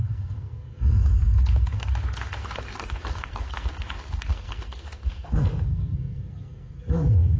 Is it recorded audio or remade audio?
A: remade